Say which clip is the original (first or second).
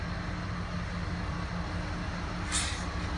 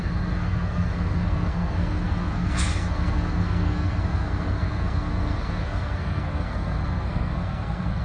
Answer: first